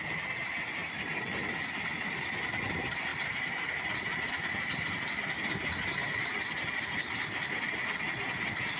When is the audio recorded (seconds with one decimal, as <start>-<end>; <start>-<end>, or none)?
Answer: 0.0-8.8